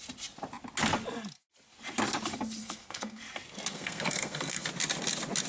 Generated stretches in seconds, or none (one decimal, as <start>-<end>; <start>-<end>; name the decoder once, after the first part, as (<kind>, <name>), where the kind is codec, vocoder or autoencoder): 2.6-3.2 (codec, SNAC); 3.7-4.7